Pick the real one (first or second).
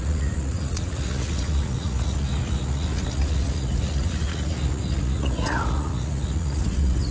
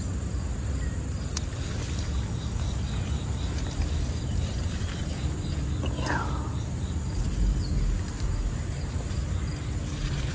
second